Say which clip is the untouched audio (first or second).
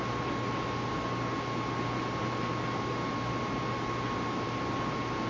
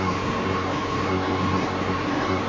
first